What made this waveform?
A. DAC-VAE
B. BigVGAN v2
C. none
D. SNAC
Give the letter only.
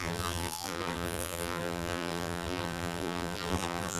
B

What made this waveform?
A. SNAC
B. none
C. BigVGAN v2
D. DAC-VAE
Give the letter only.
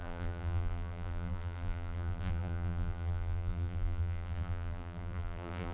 C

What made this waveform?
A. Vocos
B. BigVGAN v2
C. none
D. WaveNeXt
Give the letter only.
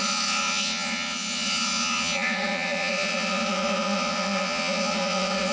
A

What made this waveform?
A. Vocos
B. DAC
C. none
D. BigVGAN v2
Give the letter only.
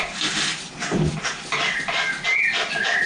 C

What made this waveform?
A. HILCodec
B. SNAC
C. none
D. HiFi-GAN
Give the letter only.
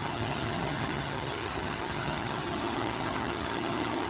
D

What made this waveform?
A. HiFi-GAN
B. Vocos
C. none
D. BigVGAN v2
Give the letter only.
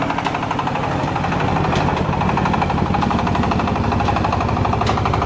C